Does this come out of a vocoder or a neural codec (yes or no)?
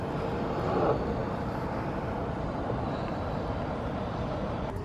no